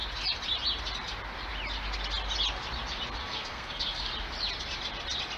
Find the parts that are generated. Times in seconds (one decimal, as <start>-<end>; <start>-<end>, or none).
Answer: 3.2-4.1